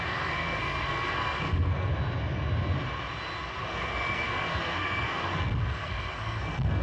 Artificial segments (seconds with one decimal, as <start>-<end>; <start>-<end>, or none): 0.0-1.9; 3.6-6.8